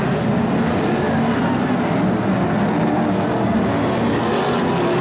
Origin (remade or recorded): recorded